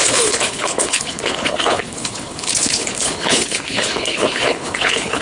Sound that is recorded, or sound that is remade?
remade